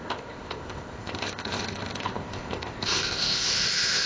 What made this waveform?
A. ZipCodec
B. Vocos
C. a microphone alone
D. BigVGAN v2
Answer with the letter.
A